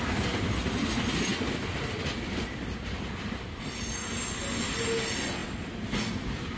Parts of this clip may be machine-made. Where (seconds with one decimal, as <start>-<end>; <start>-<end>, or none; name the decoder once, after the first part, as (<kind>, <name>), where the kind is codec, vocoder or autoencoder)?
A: none